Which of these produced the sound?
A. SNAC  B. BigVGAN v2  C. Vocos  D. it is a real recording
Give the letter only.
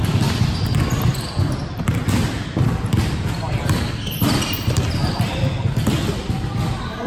D